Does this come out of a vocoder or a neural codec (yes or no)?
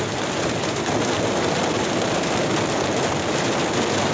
no